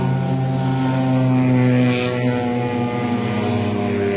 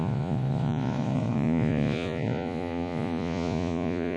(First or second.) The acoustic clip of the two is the first